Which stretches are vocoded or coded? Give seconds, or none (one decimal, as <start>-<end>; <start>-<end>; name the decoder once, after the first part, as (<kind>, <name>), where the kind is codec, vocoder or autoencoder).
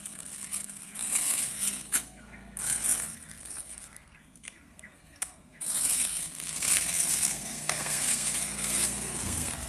0.0-9.7 (codec, SNAC)